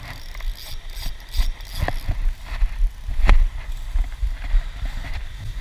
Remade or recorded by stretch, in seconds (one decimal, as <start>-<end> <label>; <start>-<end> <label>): 0.0-5.6 recorded